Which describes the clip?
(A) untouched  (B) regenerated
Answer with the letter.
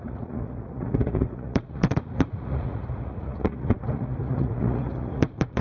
B